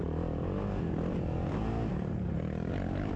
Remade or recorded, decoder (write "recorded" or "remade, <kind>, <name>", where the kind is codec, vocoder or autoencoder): recorded